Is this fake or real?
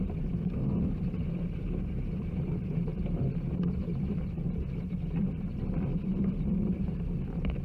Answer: real